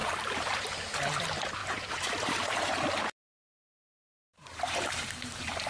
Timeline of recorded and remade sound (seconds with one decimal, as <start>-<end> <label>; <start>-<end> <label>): 0.0-0.7 remade; 0.7-1.6 recorded; 1.6-2.6 remade; 2.6-3.9 recorded; 3.9-5.7 remade